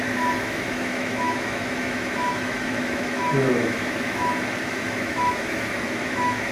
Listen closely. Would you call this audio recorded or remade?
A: remade